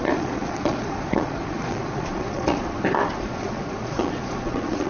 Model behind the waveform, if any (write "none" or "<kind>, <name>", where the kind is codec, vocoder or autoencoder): vocoder, Vocos